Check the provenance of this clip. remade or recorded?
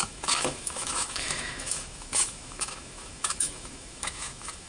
remade